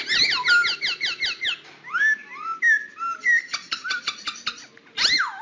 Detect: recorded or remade recorded